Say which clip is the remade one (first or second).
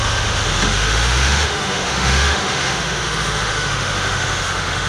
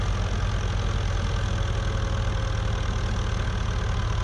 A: first